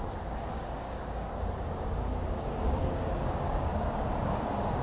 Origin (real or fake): fake